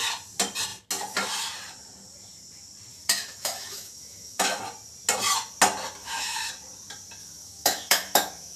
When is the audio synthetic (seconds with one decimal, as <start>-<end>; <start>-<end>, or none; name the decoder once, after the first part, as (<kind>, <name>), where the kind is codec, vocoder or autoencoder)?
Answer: 2.9-4.6 (autoencoder, DAC-VAE); 6.0-6.5; 7.2-8.6